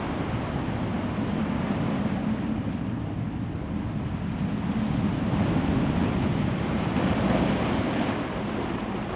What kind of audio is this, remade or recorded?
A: recorded